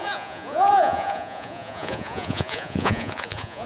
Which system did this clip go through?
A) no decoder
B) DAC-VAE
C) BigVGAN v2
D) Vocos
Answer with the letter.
D